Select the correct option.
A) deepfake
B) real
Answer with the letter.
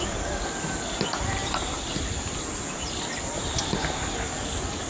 B